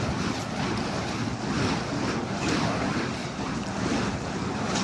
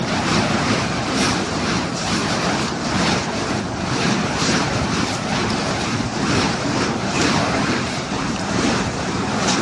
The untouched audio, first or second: first